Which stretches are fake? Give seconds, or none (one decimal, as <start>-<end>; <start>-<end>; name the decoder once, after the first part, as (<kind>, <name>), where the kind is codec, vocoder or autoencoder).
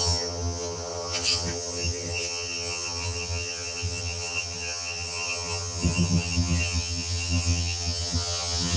0.0-8.8 (vocoder, HiFi-GAN)